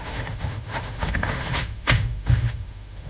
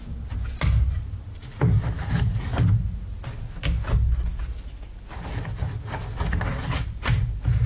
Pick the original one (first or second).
second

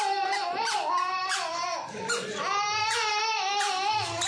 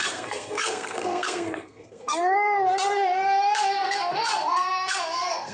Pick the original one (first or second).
first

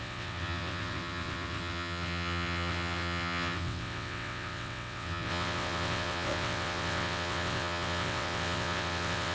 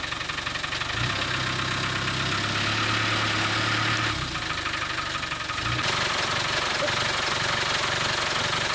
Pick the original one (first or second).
second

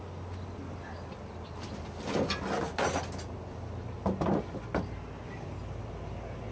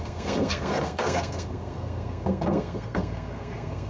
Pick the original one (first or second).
first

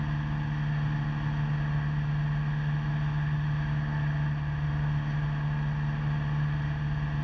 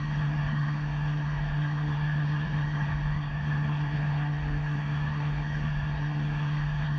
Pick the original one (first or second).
first